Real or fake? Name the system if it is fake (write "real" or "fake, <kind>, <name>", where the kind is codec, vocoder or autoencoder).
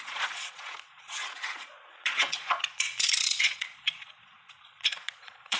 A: fake, vocoder, Vocos